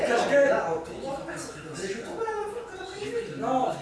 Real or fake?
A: real